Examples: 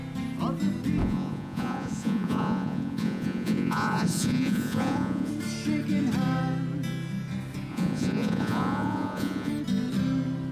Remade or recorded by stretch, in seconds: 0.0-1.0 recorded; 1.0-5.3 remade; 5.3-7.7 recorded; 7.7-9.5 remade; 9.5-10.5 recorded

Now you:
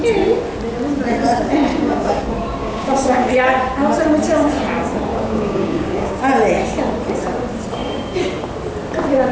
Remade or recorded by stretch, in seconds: 0.0-1.7 recorded; 1.7-2.2 remade; 2.2-2.6 recorded; 2.6-3.3 remade; 3.3-5.1 recorded; 5.1-6.2 remade; 6.2-9.3 recorded